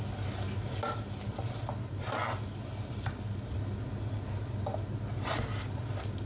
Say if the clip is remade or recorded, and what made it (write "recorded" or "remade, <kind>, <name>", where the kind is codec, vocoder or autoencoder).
recorded